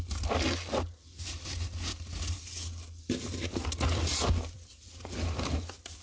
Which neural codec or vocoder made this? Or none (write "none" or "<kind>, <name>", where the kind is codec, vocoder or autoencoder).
none